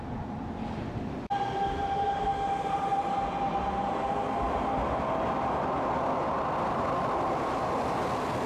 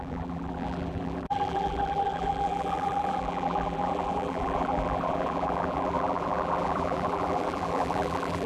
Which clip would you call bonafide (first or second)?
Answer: first